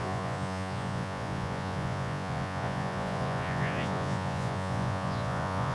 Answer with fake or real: fake